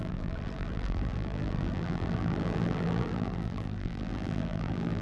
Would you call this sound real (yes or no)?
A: no